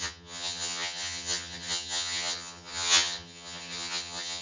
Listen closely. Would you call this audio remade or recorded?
remade